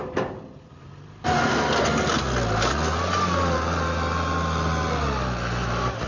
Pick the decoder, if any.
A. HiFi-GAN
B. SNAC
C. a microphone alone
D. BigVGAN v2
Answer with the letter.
C